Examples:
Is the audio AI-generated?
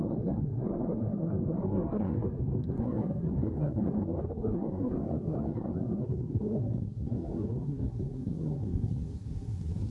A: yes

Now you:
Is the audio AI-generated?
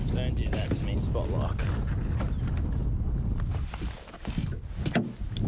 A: no